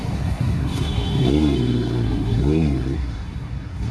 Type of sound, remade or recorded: remade